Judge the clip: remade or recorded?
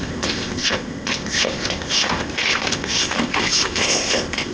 remade